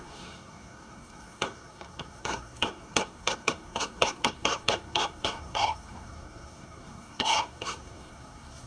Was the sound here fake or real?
fake